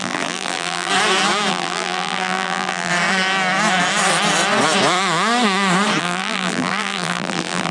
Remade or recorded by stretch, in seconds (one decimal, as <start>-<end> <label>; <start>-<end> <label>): 0.0-0.9 remade; 0.9-1.5 recorded; 1.5-2.9 remade; 2.9-6.0 recorded; 6.0-7.7 remade